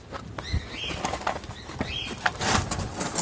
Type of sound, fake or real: real